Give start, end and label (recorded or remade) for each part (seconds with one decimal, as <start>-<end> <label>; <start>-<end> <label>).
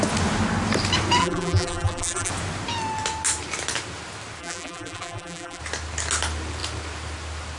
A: 0.0-1.2 recorded; 1.2-2.3 remade; 2.3-4.4 recorded; 4.4-5.6 remade; 5.6-7.6 recorded